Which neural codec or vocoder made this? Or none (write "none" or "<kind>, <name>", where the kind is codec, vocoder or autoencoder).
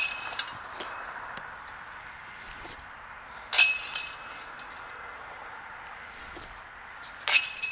none